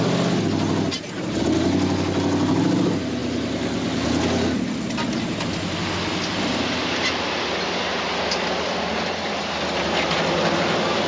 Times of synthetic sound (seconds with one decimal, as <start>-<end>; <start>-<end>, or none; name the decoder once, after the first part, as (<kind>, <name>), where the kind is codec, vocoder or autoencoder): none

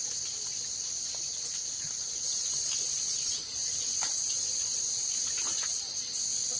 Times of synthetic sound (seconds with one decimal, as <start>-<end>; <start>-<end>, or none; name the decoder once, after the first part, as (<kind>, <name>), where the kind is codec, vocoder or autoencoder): none

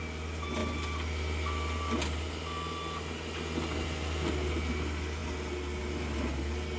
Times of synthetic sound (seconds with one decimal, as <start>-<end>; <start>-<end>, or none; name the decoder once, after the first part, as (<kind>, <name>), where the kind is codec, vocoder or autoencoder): none

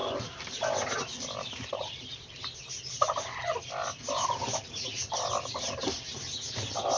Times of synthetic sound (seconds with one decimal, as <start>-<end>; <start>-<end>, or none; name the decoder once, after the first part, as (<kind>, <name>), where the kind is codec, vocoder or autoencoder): none

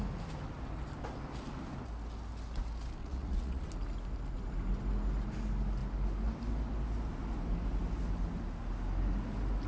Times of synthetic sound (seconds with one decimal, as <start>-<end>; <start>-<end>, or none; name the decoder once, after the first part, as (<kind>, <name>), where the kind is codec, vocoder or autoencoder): 3.0-3.7 (vocoder, Vocos)

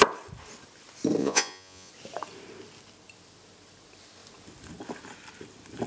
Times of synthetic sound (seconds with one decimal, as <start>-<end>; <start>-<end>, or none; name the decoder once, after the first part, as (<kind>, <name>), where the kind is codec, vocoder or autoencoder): 1.2-1.9 (vocoder, Vocos)

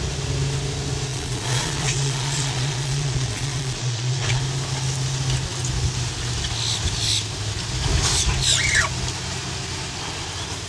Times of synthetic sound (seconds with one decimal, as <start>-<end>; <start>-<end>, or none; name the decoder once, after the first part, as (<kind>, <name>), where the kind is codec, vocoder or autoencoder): 1.1-4.4 (vocoder, Vocos)